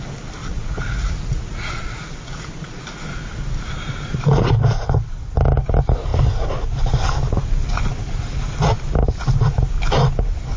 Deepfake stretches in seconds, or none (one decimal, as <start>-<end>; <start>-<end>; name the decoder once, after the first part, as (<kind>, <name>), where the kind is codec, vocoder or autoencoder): 0.4-2.8 (vocoder, Vocos)